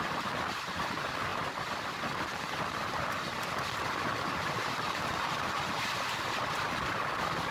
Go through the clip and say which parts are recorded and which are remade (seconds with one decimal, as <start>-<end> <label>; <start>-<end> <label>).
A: 0.0-7.5 recorded